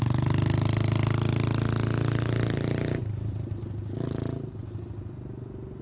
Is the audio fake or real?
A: real